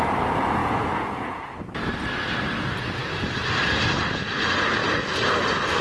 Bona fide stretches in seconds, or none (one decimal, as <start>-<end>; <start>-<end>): 0.0-0.6; 1.6-5.8